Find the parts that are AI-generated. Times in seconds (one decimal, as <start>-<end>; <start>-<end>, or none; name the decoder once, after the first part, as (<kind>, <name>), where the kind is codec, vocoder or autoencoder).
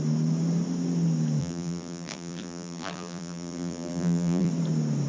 1.4-4.5 (vocoder, BigVGAN v2)